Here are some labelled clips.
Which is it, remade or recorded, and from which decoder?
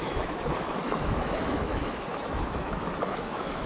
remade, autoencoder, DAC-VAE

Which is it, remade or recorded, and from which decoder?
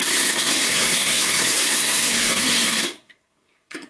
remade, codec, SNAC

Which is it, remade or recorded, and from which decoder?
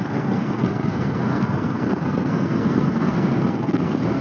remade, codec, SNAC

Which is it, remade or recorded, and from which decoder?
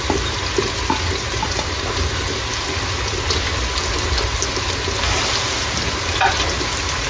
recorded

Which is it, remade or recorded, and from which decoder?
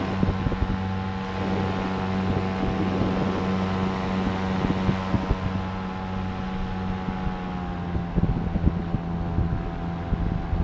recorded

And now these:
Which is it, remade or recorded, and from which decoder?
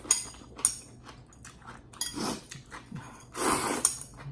recorded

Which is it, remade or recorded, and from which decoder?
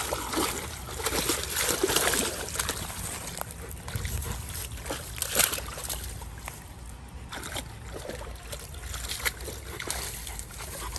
recorded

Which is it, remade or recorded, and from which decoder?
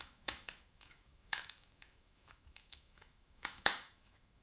remade, autoencoder, DAC-VAE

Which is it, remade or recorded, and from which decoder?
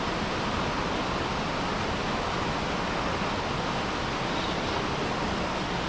recorded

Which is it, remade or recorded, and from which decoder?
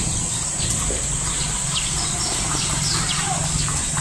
remade, vocoder, BigVGAN v2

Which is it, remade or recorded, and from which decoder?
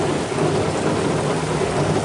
recorded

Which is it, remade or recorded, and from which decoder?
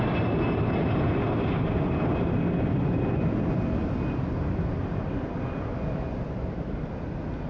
recorded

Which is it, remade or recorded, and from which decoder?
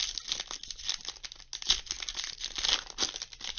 recorded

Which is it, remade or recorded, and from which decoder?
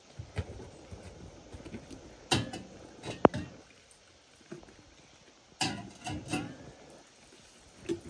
recorded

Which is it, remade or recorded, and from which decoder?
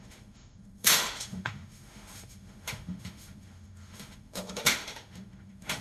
remade, autoencoder, DAC-VAE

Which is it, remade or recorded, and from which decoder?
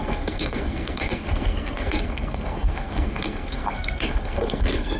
remade, codec, SNAC